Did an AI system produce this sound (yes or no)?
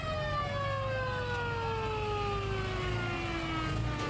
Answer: no